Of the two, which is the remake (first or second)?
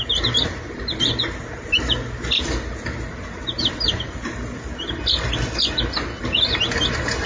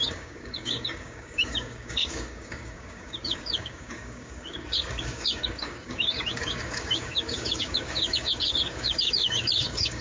second